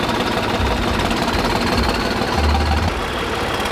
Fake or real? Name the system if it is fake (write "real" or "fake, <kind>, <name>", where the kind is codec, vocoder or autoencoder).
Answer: real